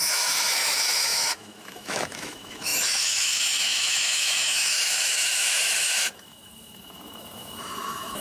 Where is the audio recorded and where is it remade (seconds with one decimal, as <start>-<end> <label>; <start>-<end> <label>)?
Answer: 0.0-8.2 remade